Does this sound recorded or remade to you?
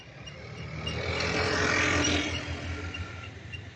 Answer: remade